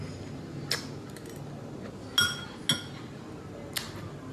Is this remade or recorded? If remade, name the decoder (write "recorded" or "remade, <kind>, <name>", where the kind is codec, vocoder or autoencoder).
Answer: recorded